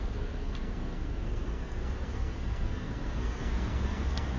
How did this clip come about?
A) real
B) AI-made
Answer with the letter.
B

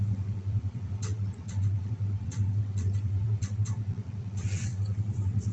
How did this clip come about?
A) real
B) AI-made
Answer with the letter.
B